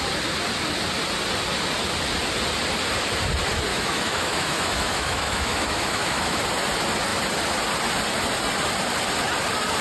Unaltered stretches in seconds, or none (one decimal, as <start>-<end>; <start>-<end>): 0.0-3.7; 6.4-9.8